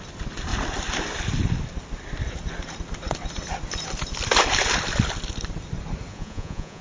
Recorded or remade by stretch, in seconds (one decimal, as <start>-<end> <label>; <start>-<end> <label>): 0.0-6.1 recorded; 6.1-6.8 remade